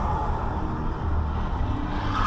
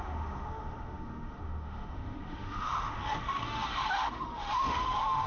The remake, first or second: second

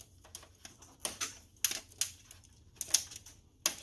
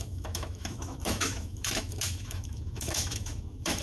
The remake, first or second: second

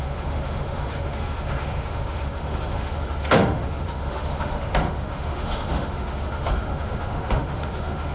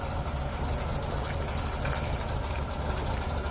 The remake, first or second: first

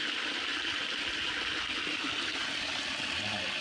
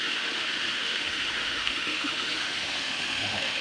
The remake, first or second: second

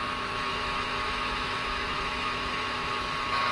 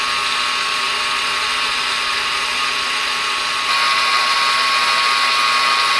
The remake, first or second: first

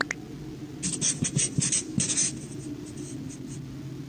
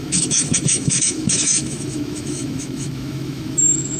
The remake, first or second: second